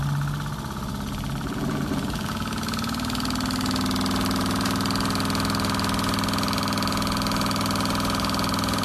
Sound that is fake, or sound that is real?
real